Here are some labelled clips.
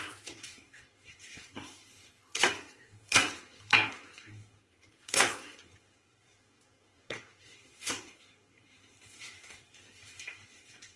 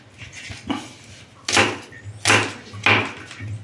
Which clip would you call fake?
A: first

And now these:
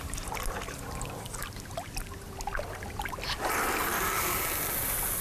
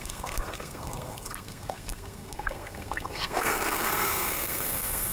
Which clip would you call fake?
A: second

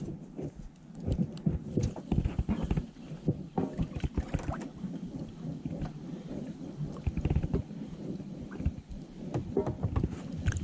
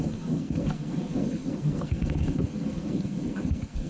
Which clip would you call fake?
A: second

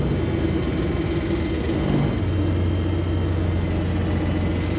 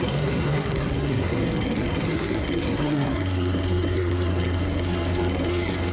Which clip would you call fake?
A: second